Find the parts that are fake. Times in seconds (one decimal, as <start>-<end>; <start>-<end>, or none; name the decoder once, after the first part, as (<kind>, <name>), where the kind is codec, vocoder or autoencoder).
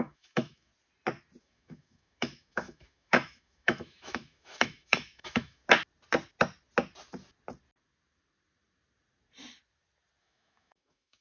0.0-0.7 (autoencoder, DAC-VAE); 1.4-5.6; 10.2-11.2